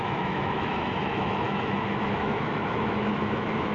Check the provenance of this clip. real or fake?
fake